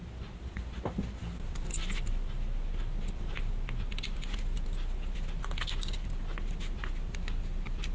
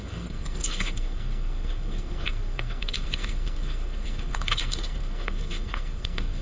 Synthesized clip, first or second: second